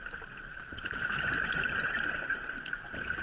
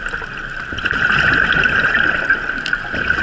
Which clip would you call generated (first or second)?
first